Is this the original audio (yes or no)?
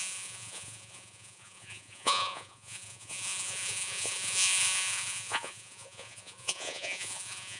no